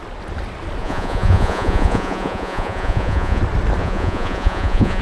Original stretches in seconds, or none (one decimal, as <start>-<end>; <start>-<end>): 0.0-0.8; 3.4-3.8